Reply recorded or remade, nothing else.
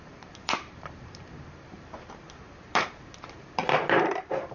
remade